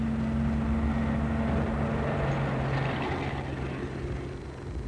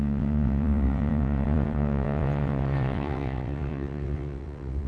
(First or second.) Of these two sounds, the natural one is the first